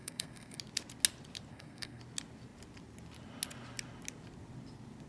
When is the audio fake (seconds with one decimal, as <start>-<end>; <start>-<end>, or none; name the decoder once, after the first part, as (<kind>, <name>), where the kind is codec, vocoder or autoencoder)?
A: 0.0-0.6 (codec, SNAC); 1.5-2.0